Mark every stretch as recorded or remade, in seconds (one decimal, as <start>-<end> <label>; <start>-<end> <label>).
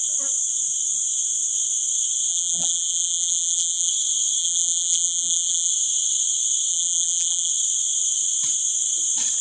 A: 0.0-2.3 recorded; 2.3-3.9 remade; 3.9-4.4 recorded; 4.4-5.7 remade; 5.7-6.7 recorded; 6.7-7.5 remade; 7.5-9.4 recorded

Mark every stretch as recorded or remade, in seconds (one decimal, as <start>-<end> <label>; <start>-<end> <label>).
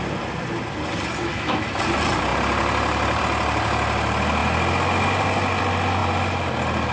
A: 0.0-1.2 recorded; 1.2-1.8 remade; 1.8-6.9 recorded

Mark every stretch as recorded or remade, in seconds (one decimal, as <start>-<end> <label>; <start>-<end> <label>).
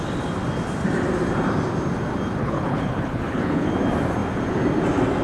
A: 0.0-2.4 recorded; 2.4-3.7 remade; 3.7-5.2 recorded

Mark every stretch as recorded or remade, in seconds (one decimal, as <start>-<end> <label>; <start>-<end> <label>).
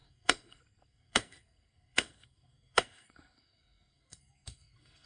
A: 0.0-5.1 remade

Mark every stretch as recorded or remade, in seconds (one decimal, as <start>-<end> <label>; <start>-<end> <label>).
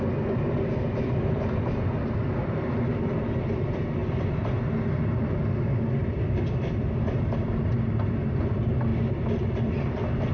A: 0.0-10.3 recorded